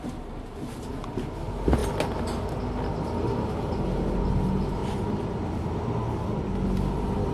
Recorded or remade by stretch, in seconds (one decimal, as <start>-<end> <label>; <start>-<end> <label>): 0.0-7.3 recorded